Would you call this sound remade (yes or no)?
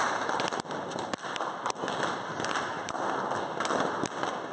no